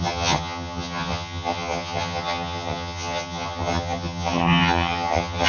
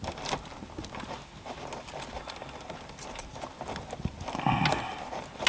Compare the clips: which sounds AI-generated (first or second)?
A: first